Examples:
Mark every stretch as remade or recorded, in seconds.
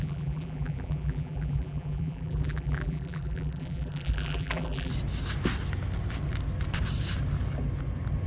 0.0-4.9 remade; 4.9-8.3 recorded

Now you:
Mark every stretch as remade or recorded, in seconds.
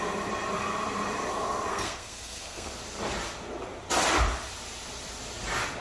0.0-1.7 recorded; 1.7-2.7 remade; 2.7-5.8 recorded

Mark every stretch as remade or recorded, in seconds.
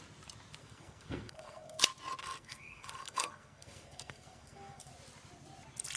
0.0-0.6 recorded; 0.6-1.8 remade; 1.8-2.2 recorded; 2.2-4.9 remade; 4.9-6.0 recorded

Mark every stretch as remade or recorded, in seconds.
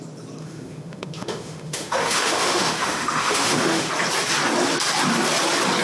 0.0-0.4 recorded; 0.4-3.9 remade; 3.9-5.8 recorded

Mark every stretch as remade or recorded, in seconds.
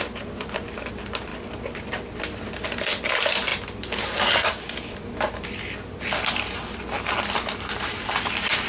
0.0-8.7 recorded